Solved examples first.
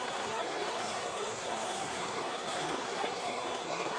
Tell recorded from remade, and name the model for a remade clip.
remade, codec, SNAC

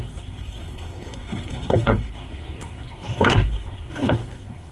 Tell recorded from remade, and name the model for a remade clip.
remade, codec, SNAC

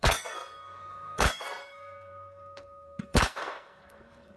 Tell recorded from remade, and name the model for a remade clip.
remade, codec, SNAC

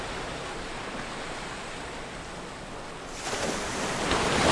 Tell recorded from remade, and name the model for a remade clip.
recorded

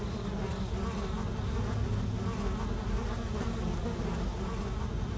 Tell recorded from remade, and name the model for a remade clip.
recorded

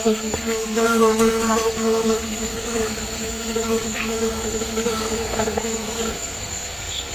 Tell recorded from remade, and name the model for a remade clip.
remade, codec, SNAC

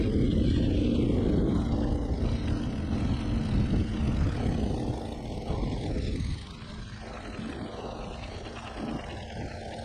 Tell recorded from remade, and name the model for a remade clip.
recorded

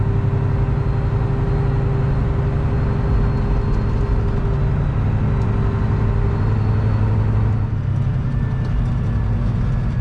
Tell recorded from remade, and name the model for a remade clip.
recorded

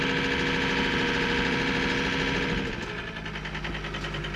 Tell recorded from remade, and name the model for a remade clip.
recorded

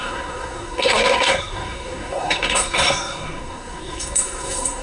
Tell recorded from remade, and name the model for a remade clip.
remade, codec, SNAC